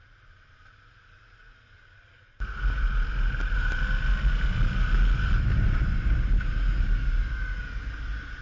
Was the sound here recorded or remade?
recorded